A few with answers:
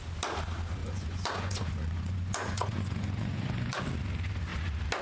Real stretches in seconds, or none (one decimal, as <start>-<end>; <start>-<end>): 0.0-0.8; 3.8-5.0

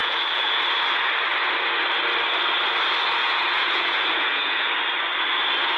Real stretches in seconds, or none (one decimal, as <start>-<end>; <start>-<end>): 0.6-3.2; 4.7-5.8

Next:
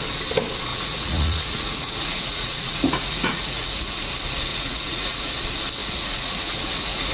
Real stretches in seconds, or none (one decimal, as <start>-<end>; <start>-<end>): 0.0-0.7; 4.1-4.5; 5.3-5.8

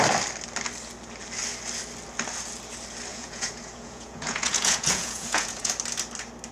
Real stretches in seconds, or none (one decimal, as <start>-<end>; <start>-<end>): 0.0-3.1; 5.7-6.5

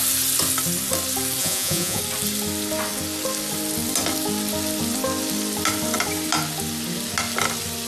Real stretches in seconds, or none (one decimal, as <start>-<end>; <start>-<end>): 0.0-1.4; 2.0-7.9